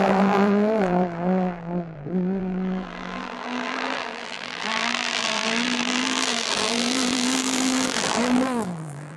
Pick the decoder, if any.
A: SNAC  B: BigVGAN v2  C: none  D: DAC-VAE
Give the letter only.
B